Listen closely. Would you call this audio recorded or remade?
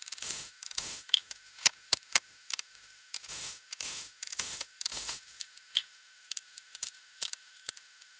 remade